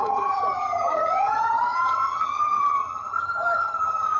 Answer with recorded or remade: remade